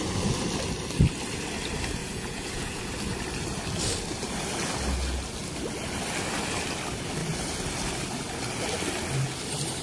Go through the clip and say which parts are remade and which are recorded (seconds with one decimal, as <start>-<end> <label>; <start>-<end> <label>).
0.0-2.0 recorded; 2.0-2.8 remade; 2.8-9.8 recorded